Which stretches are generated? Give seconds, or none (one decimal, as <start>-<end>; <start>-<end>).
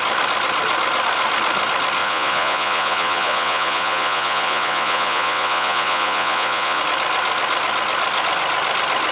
2.0-6.8